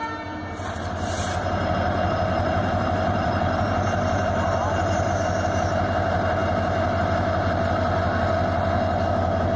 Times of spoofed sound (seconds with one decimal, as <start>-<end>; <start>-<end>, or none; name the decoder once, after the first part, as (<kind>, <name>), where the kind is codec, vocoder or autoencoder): 0.0-5.1 (vocoder, BigVGAN v2)